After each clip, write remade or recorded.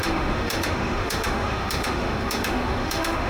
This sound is remade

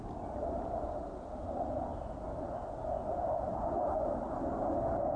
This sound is recorded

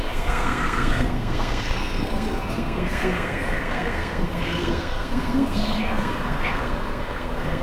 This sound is remade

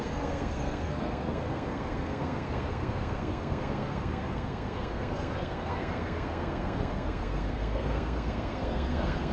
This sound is remade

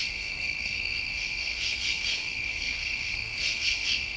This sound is remade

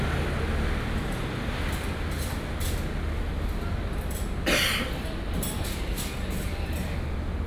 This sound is recorded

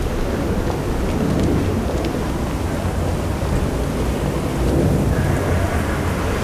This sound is recorded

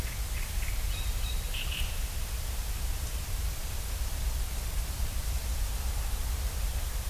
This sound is recorded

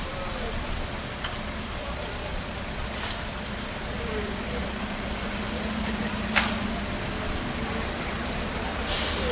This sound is recorded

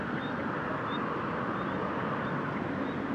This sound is recorded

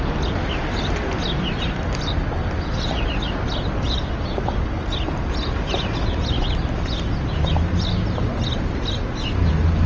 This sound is recorded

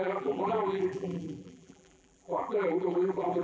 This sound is remade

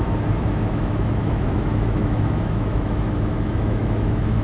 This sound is remade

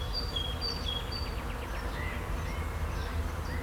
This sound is recorded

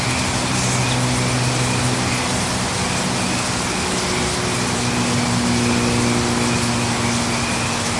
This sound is recorded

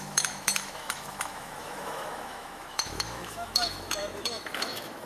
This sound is remade